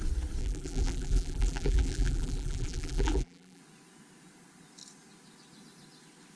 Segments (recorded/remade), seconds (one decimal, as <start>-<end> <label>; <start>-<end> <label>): 0.0-0.4 recorded; 0.4-3.6 remade; 3.6-6.4 recorded